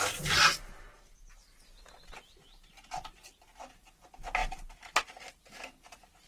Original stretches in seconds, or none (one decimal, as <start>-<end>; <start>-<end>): 0.0-6.3